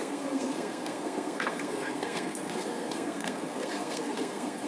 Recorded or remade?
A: remade